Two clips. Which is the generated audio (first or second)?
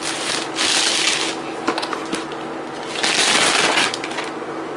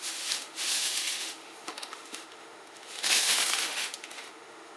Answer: second